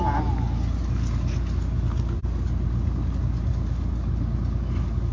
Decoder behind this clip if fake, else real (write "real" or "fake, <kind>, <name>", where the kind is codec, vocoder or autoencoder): real